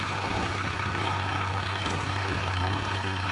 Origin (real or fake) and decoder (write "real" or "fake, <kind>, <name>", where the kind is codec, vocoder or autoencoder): fake, codec, SNAC